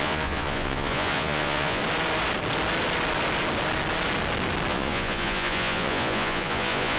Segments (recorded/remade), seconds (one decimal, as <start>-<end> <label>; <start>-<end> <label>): 0.0-1.8 remade; 1.8-4.7 recorded; 4.7-7.0 remade